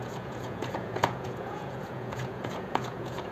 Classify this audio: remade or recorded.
remade